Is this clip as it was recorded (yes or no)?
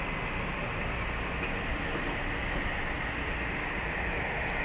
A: yes